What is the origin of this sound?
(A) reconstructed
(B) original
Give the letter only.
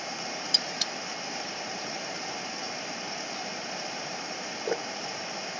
A